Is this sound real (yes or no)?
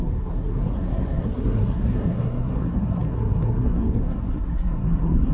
no